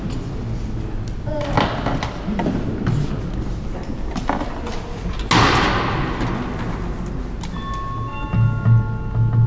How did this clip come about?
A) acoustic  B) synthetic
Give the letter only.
A